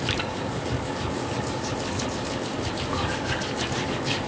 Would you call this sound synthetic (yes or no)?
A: yes